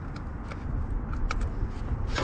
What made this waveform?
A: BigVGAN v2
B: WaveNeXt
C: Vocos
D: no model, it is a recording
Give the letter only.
D